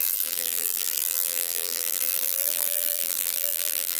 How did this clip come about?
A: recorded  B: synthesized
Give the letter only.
B